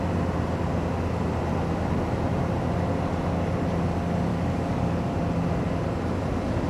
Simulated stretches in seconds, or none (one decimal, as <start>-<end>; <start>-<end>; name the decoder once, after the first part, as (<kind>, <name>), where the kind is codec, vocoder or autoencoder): 4.3-5.1 (codec, DAC)

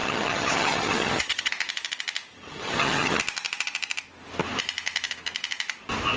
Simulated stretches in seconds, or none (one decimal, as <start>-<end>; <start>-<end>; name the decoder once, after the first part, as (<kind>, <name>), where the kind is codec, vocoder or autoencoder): 0.0-1.5 (vocoder, HiFi-GAN); 2.3-3.2

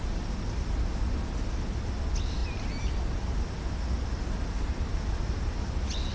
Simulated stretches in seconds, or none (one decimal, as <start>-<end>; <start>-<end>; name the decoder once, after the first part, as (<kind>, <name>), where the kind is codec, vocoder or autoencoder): none

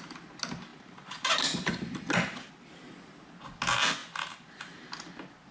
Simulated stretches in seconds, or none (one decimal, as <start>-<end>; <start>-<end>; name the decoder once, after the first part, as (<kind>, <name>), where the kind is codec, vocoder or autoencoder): 0.7-2.0 (vocoder, BigVGAN v2); 4.0-5.1

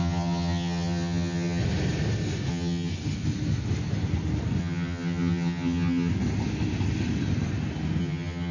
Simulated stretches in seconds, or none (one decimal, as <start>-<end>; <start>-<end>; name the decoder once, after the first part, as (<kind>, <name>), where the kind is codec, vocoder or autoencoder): 0.0-1.6 (vocoder, HiFi-GAN); 2.5-2.9; 4.6-6.1; 8.0-8.5

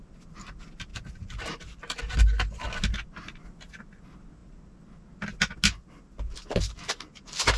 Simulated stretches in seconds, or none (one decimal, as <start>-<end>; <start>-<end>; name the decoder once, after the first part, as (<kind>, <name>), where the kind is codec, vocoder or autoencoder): 0.9-2.0 (vocoder, BigVGAN v2); 6.4-7.6